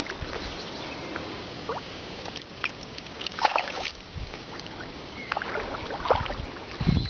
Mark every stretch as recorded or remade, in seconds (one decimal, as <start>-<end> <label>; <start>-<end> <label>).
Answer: 0.0-1.2 recorded; 1.2-5.5 remade; 5.5-7.1 recorded